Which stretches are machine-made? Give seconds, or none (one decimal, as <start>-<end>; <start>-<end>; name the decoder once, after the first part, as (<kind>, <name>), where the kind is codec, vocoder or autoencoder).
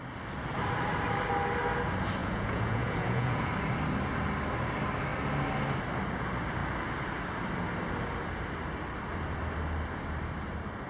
2.2-3.5 (vocoder, Vocos)